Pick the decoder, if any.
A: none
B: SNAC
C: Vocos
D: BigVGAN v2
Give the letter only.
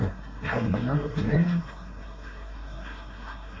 B